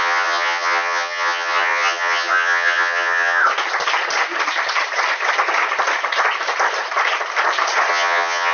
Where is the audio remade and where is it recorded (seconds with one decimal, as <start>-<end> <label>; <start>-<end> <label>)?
0.0-3.4 remade; 3.4-7.9 recorded; 7.9-8.5 remade